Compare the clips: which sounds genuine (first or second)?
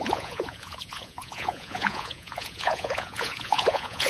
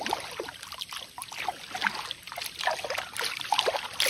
second